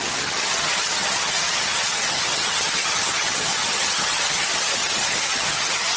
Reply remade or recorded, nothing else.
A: remade